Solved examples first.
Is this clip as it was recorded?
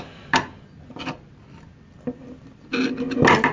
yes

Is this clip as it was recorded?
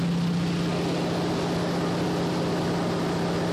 yes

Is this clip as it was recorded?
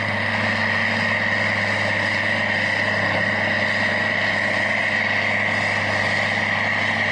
yes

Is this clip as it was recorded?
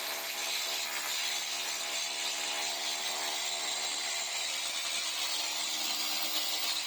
yes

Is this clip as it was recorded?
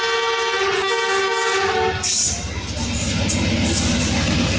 yes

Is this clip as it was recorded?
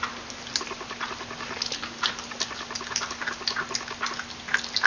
yes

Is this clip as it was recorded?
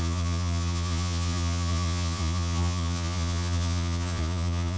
no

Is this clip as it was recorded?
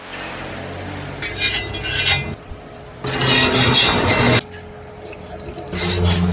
yes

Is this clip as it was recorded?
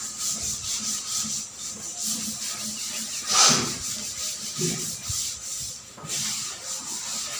yes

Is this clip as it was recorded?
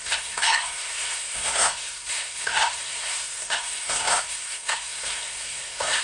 no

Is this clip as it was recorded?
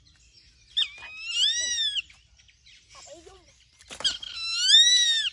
yes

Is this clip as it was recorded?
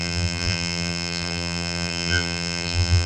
no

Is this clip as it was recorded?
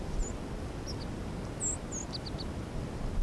yes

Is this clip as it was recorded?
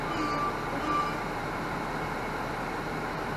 yes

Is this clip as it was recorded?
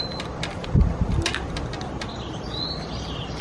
yes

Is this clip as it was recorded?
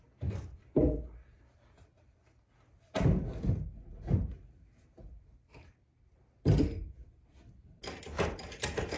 yes